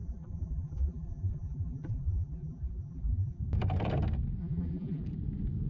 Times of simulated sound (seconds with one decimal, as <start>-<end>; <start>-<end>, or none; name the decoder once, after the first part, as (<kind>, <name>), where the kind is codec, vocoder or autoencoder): 0.0-3.4 (vocoder, BigVGAN v2); 4.4-5.0